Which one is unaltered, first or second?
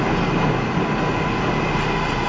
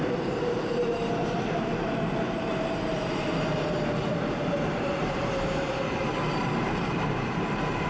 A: first